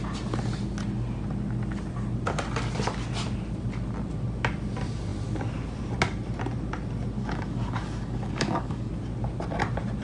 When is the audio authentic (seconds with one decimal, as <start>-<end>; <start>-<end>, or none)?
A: 0.0-7.2; 8.9-10.0